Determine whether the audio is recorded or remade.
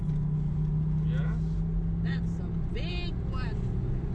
recorded